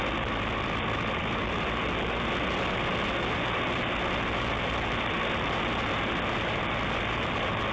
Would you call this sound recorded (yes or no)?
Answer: yes